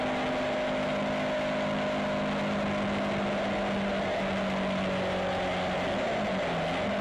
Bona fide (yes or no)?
yes